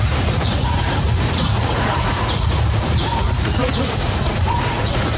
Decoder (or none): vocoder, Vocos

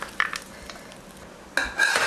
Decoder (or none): none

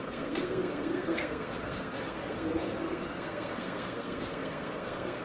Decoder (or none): codec, SNAC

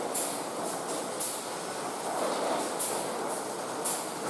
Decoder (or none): none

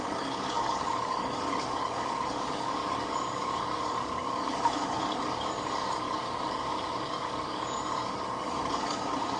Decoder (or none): codec, DAC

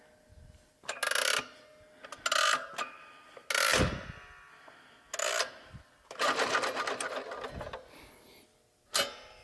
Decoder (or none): none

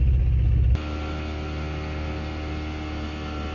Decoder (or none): none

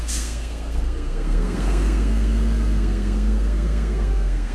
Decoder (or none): codec, SNAC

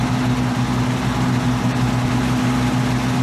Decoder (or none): none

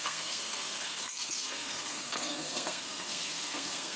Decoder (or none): codec, SNAC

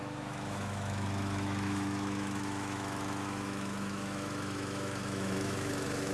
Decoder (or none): autoencoder, DAC-VAE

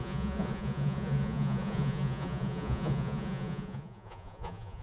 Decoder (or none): vocoder, Vocos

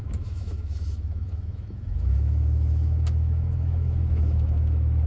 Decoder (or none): autoencoder, DAC-VAE